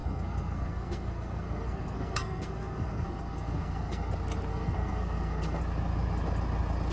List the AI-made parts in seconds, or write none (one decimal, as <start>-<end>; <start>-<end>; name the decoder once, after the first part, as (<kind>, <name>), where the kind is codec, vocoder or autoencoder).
0.0-4.1 (codec, SNAC); 4.5-5.6